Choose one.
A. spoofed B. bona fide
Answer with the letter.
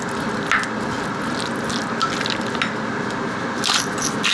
B